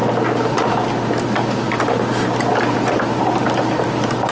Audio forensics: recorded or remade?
recorded